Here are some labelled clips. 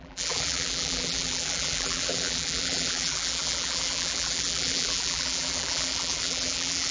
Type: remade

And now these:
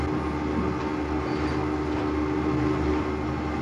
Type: recorded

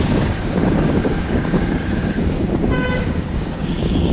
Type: remade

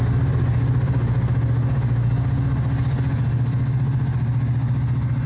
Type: recorded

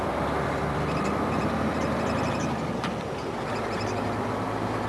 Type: remade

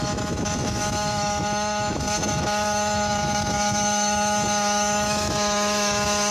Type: remade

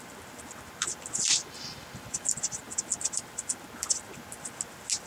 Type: recorded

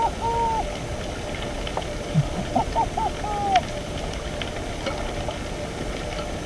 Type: recorded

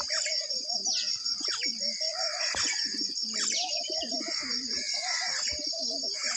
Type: remade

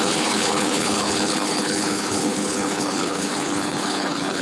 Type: remade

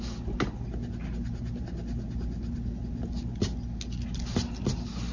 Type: recorded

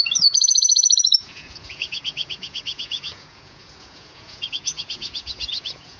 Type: remade